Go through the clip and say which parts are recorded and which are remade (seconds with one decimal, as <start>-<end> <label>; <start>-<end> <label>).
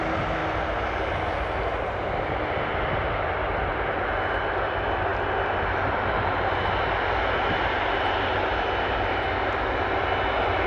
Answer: 0.0-10.7 recorded